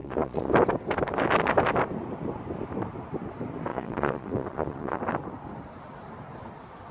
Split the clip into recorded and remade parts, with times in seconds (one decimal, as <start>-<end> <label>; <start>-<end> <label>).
0.0-0.5 remade; 0.5-3.7 recorded; 3.7-5.0 remade; 5.0-6.9 recorded